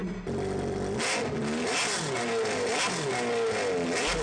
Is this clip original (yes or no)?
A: yes